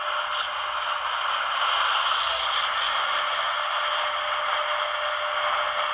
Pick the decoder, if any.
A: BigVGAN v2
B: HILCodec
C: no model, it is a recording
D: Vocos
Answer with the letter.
C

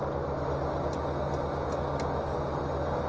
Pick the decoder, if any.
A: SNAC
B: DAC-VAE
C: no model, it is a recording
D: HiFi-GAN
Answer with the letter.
C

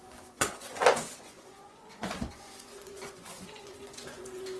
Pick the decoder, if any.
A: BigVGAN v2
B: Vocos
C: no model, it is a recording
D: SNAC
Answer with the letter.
B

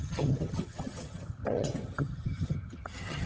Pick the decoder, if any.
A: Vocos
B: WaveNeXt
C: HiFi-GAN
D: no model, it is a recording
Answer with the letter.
C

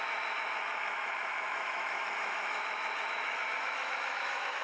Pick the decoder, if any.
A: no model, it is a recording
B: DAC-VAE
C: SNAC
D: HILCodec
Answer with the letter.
B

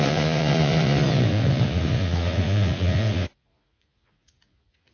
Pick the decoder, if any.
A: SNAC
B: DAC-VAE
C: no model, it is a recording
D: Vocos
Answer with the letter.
D